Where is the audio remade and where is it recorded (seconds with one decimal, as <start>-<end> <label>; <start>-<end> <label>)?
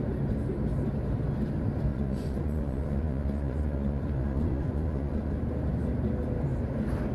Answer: 0.0-1.9 recorded; 1.9-5.3 remade; 5.3-7.1 recorded